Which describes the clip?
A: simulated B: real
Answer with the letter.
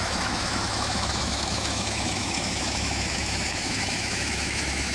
A